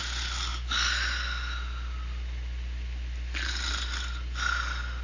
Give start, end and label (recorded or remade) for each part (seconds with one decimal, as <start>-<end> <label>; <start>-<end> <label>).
0.0-5.0 recorded